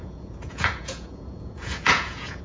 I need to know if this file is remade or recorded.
remade